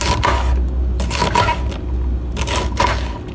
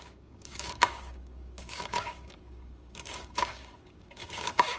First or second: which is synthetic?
second